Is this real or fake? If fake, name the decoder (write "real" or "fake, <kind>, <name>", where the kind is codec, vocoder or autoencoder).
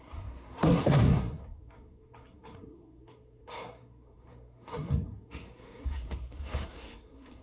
fake, codec, SNAC